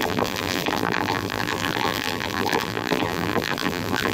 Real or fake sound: fake